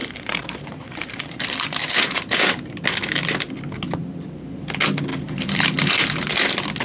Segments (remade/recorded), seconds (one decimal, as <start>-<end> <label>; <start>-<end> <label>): 0.0-2.7 remade; 2.7-5.1 recorded; 5.1-6.3 remade; 6.3-6.8 recorded